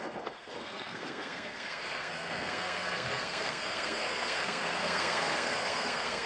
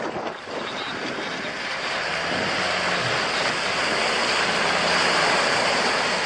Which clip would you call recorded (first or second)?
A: second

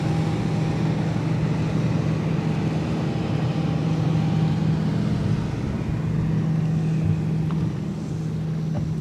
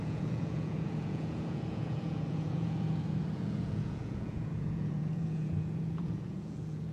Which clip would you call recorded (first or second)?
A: first